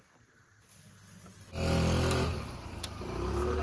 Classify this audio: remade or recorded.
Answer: recorded